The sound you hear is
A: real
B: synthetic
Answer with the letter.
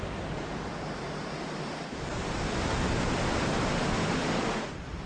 A